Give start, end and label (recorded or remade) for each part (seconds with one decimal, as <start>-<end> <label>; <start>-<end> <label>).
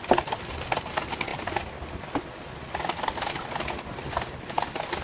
0.0-5.0 recorded